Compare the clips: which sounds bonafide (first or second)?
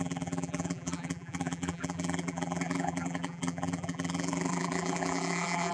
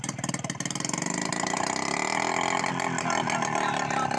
second